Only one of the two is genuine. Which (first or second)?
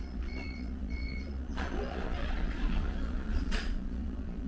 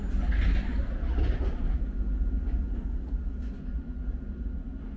second